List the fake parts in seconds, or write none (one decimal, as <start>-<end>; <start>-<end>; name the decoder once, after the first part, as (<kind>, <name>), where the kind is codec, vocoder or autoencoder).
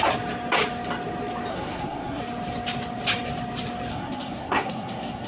1.5-2.2 (codec, SNAC); 3.9-5.3